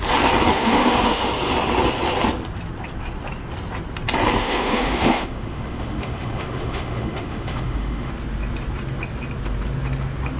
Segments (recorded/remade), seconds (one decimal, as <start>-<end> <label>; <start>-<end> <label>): 0.0-0.5 recorded; 0.5-1.3 remade; 1.3-4.4 recorded; 4.4-8.1 remade; 8.1-10.4 recorded